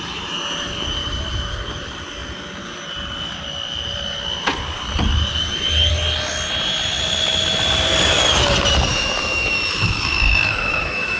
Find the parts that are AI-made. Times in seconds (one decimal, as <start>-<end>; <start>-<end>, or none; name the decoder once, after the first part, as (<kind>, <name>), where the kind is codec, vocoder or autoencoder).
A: 8.9-11.2 (autoencoder, DAC-VAE)